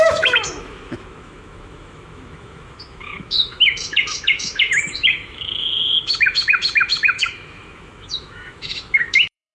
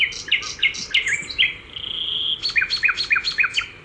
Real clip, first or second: second